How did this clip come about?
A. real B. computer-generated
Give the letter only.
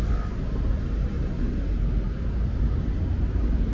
A